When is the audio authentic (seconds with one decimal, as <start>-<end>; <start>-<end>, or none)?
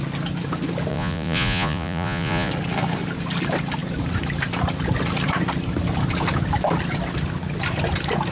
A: 0.0-0.9; 2.5-8.3